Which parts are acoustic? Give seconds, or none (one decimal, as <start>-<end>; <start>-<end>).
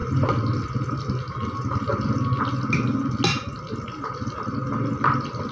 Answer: 0.0-5.5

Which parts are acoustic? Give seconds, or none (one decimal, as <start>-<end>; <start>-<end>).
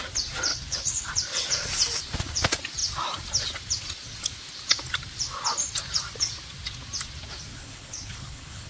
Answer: 0.0-0.5; 1.1-7.5